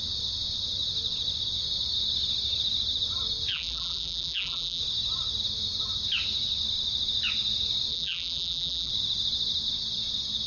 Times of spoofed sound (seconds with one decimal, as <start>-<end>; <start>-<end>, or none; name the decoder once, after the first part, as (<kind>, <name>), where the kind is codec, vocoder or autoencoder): 3.5-4.8 (vocoder, BigVGAN v2); 7.9-8.9